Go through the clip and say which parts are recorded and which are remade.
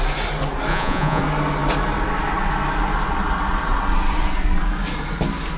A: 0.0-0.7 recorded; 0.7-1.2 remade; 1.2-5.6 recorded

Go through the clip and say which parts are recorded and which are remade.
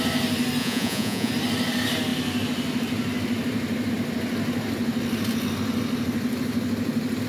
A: 0.0-0.6 recorded; 0.6-1.3 remade; 1.3-7.3 recorded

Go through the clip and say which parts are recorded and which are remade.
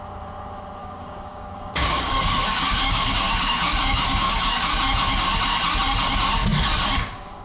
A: 0.0-0.8 recorded; 0.8-4.7 remade; 4.7-7.4 recorded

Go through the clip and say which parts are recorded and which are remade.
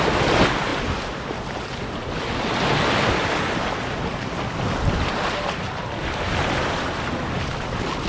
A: 0.0-8.1 recorded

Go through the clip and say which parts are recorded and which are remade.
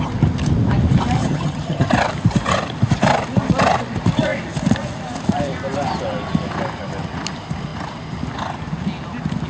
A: 0.0-1.2 recorded; 1.2-1.9 remade; 1.9-9.5 recorded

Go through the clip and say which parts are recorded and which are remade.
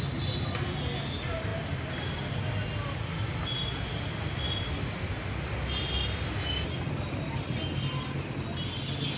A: 0.0-9.2 recorded